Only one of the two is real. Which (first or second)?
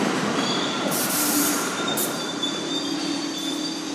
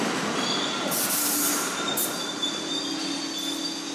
second